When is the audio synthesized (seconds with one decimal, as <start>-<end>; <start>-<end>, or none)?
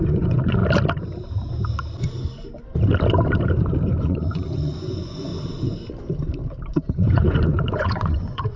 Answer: 0.0-0.6; 4.0-5.3; 6.7-8.6